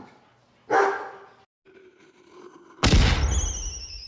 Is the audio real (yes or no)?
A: yes